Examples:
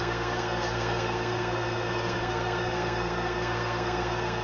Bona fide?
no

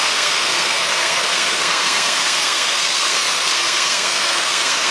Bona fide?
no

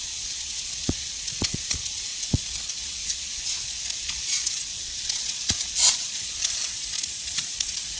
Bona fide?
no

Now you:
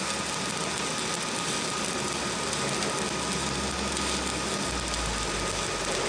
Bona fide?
yes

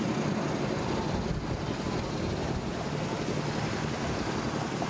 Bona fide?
yes